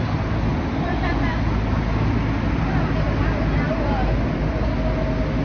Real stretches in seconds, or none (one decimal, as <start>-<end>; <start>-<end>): 0.0-5.4